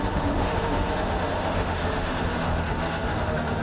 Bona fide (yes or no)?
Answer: no